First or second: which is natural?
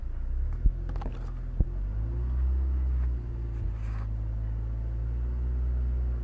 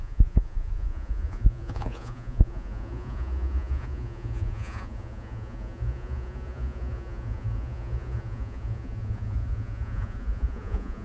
first